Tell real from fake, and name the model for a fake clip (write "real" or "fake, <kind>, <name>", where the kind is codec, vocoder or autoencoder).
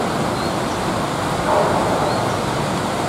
real